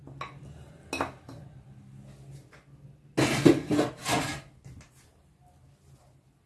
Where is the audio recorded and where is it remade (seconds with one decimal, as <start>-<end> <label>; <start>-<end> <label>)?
0.0-6.5 recorded